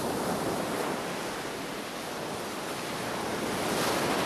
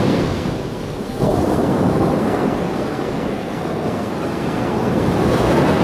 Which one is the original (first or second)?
first